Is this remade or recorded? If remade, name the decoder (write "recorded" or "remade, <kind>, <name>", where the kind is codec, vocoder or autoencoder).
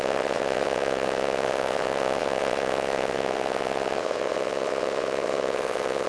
remade, vocoder, WaveNeXt